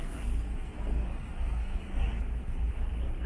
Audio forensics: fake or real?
fake